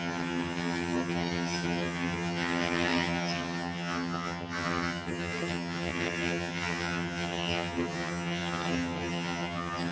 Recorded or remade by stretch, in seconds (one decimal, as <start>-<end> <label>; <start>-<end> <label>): 0.0-9.9 remade